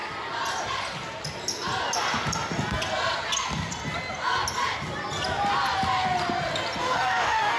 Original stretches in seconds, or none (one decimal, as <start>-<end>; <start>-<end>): 0.0-6.8